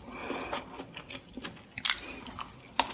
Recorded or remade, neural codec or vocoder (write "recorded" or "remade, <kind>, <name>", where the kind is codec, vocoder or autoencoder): recorded